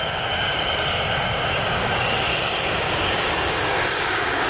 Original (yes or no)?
no